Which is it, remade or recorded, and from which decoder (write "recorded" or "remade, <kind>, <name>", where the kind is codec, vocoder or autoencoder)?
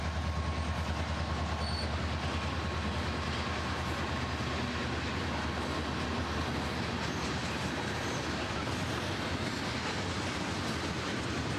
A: recorded